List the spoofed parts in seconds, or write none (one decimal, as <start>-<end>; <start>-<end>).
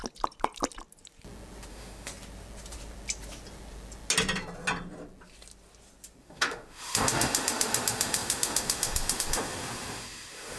1.7-2.1; 6.2-10.6